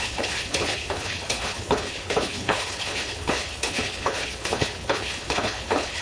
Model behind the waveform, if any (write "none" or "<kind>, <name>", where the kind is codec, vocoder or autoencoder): codec, HILCodec